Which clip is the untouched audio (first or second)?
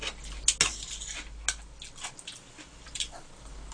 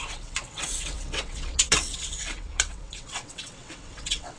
first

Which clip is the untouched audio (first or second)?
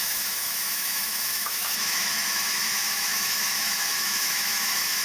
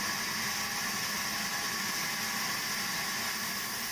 second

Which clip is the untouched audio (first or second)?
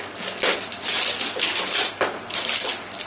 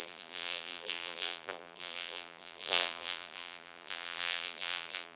first